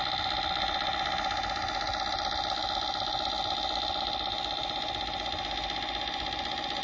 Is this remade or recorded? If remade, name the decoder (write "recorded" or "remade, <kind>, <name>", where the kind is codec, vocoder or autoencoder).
recorded